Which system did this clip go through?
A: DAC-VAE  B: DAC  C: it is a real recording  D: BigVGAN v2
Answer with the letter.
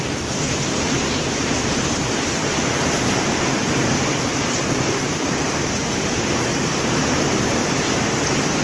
D